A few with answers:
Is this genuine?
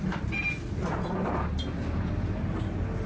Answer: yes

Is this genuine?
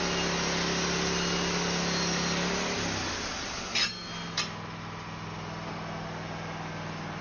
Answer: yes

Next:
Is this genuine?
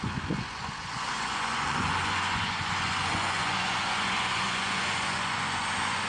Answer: no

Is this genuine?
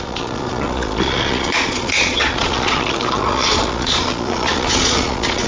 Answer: no